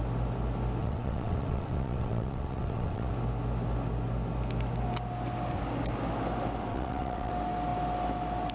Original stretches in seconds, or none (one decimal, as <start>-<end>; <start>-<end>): 0.0-0.8; 3.1-6.7; 7.3-8.5